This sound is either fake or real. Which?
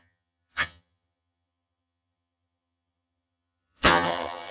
fake